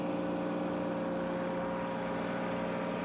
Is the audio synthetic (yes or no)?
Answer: no